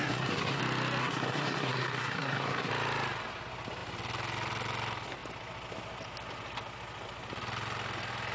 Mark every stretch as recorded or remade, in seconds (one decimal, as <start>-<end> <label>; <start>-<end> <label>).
0.0-0.6 remade; 0.6-1.0 recorded; 1.0-2.7 remade; 2.7-8.3 recorded